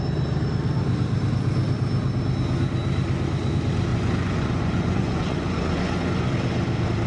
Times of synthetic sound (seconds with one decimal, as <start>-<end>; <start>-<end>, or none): 3.9-6.3